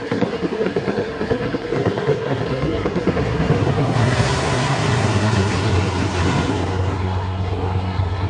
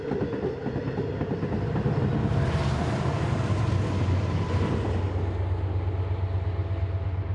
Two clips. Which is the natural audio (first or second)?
second